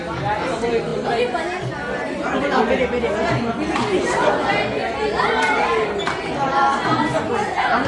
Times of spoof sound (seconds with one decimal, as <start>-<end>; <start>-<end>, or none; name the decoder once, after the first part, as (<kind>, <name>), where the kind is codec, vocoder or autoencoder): 4.8-7.9 (vocoder, BigVGAN v2)